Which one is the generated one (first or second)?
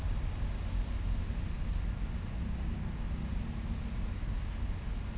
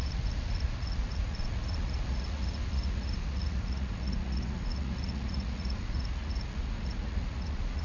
second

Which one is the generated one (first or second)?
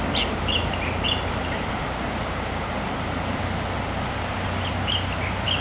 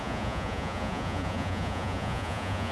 second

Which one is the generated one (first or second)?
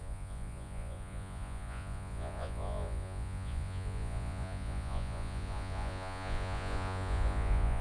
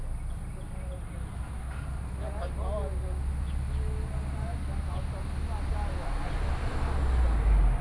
first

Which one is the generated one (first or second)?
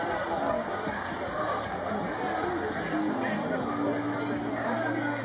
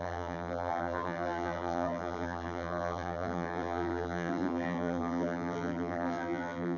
second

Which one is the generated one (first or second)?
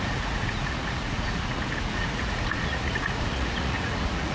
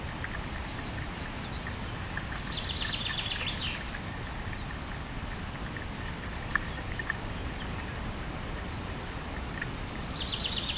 first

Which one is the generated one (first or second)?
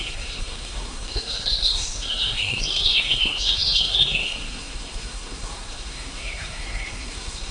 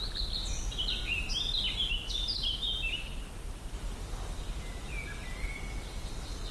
first